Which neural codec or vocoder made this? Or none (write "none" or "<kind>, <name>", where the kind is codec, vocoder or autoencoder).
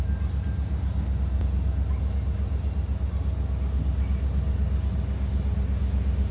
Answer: none